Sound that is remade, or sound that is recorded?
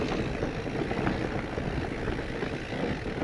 recorded